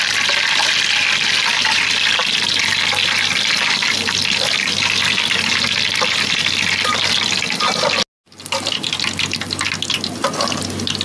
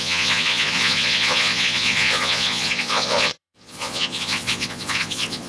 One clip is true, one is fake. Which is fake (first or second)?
second